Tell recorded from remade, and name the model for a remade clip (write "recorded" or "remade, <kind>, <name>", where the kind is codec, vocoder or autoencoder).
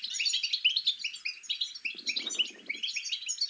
recorded